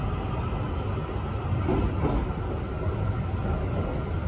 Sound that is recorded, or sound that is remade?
recorded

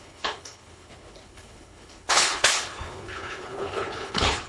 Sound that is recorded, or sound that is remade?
remade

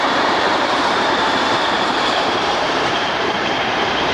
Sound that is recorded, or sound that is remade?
remade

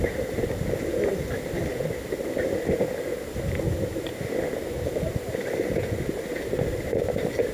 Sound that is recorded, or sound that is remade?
recorded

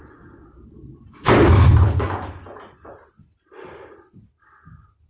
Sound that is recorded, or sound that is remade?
recorded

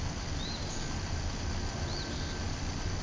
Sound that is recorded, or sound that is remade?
recorded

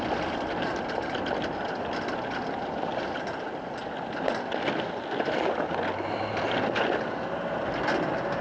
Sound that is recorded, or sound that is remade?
recorded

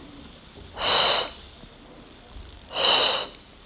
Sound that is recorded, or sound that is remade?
recorded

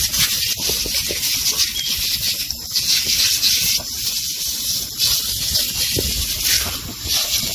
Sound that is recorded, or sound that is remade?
recorded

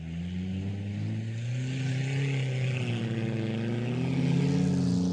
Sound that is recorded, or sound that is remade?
recorded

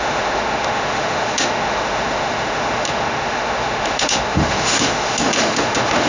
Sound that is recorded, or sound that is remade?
remade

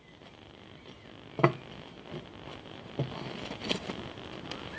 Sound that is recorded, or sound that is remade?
recorded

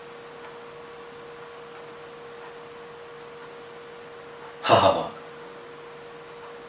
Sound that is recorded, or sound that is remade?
recorded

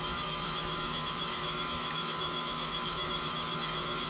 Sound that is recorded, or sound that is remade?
remade